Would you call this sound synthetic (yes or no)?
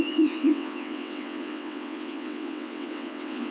yes